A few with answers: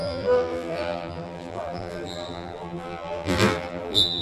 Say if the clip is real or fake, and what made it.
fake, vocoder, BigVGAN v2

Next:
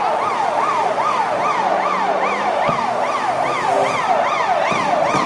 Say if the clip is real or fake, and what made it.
real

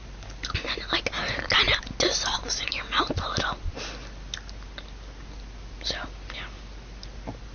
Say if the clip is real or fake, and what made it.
real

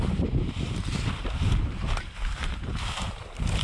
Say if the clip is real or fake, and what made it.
fake, vocoder, BigVGAN v2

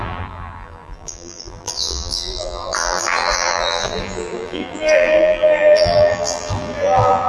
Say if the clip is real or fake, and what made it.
fake, vocoder, BigVGAN v2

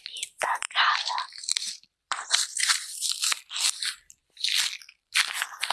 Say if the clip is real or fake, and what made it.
fake, vocoder, BigVGAN v2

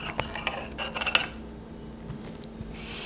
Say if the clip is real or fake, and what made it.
real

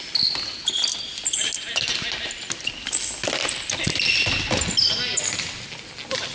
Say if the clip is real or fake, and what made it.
real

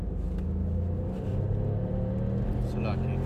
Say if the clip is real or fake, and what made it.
real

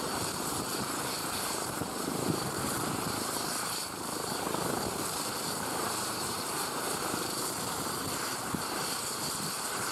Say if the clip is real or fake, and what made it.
fake, vocoder, BigVGAN v2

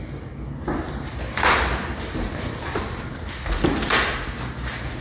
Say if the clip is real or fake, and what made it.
real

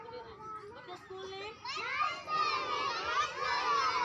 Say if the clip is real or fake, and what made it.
real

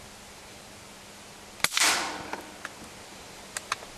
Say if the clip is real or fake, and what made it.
real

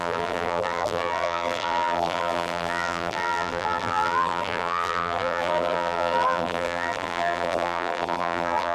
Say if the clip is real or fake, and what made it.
fake, vocoder, BigVGAN v2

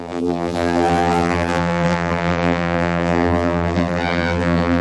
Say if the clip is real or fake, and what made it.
fake, vocoder, BigVGAN v2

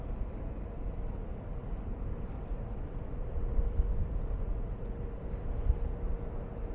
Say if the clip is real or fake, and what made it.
real